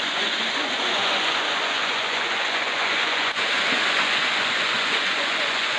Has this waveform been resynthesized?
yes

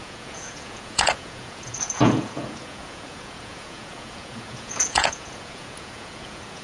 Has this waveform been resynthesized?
yes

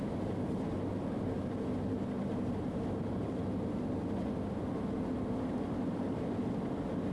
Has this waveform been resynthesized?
no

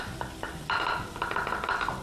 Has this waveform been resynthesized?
yes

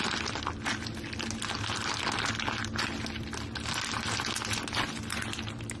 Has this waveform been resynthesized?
no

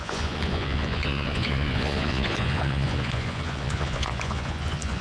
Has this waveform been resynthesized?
yes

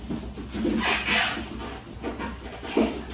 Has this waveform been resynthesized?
no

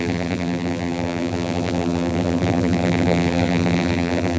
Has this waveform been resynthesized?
yes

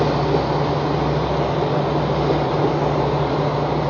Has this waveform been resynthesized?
no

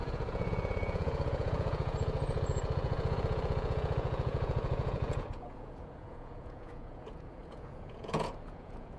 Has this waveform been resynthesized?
yes